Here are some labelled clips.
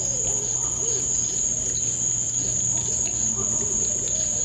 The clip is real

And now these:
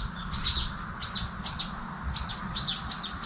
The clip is real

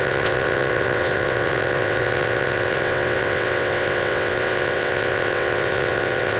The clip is fake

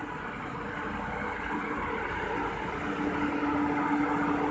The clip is real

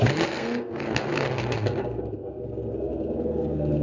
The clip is fake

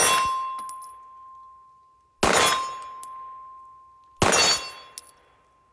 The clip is real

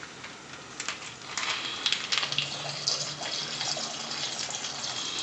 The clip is real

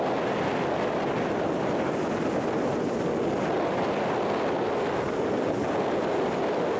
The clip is real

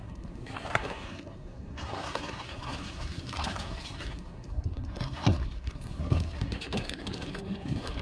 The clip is fake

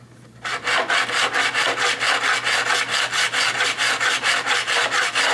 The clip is real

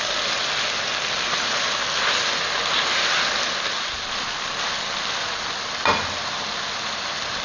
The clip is real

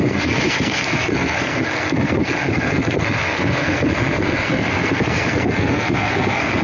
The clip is fake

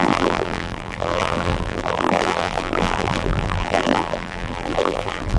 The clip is fake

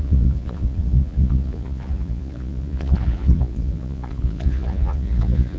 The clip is fake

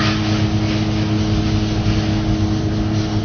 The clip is real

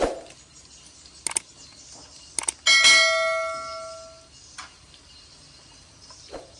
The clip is real